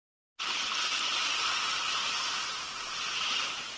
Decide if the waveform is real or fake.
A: real